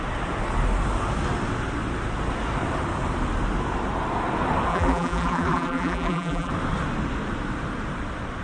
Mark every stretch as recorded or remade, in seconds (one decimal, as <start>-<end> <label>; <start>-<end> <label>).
0.0-4.7 recorded; 4.7-6.5 remade; 6.5-8.4 recorded